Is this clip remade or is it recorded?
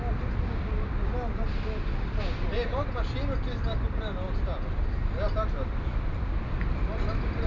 recorded